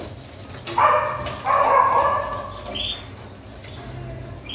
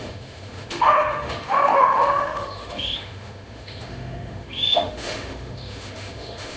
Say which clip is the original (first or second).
first